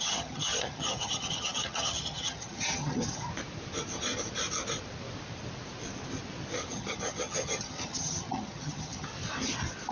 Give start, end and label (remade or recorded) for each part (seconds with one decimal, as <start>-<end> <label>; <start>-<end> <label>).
0.0-3.3 remade; 3.3-6.7 recorded; 6.7-9.1 remade; 9.1-9.9 recorded